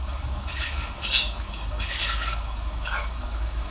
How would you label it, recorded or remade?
remade